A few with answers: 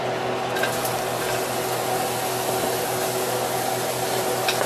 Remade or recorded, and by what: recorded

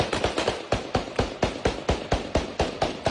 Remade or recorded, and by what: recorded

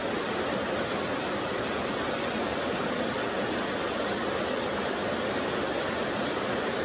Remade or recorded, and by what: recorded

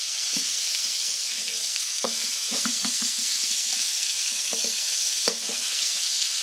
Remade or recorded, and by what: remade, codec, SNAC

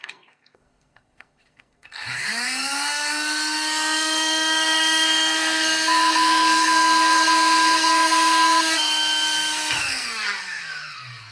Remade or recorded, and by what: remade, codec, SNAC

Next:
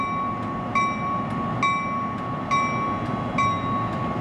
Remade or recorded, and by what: recorded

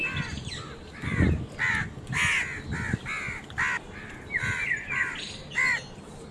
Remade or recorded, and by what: recorded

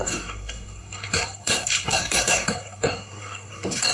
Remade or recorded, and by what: remade, codec, SNAC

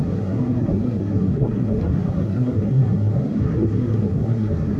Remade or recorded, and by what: remade, codec, SNAC